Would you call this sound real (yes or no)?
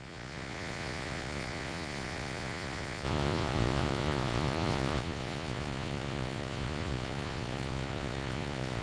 no